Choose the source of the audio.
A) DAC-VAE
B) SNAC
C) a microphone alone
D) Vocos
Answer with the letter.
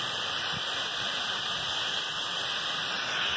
C